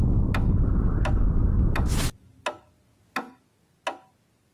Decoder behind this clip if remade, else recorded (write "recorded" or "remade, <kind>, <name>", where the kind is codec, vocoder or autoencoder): recorded